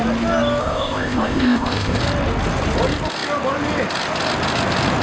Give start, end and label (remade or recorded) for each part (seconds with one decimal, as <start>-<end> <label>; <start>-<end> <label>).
0.0-0.6 recorded; 0.6-2.0 remade; 2.0-5.0 recorded